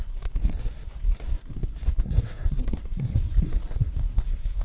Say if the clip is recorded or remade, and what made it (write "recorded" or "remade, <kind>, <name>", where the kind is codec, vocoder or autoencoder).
remade, codec, SNAC